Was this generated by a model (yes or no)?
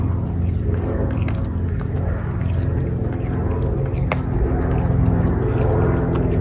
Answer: no